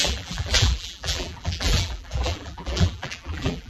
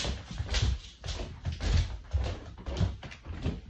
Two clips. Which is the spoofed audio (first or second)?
first